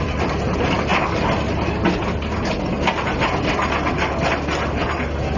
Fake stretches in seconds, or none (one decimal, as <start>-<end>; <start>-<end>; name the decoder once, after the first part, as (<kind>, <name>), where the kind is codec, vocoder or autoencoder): none